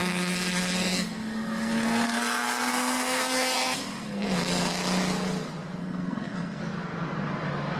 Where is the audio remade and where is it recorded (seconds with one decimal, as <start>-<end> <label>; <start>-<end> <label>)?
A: 0.0-4.7 remade; 4.7-5.8 recorded; 5.8-6.6 remade; 6.6-7.8 recorded